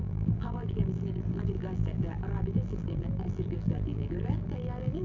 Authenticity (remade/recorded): remade